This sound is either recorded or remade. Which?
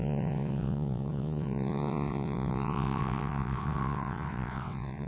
remade